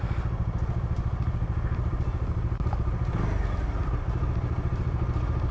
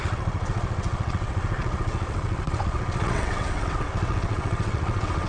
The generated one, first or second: second